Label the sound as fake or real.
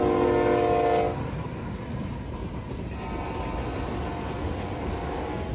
real